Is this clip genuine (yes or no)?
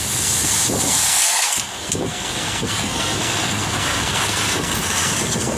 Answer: no